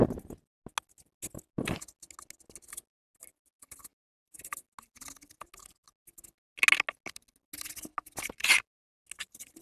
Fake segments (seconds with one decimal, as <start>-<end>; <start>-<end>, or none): none